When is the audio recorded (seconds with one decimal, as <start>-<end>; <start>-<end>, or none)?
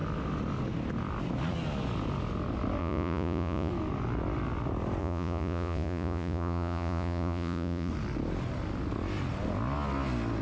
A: 0.0-2.8; 3.7-5.0; 7.9-10.4